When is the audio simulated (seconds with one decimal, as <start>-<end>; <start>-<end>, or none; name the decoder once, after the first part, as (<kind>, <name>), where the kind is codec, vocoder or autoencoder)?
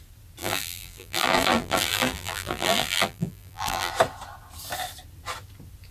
0.4-3.9 (vocoder, BigVGAN v2)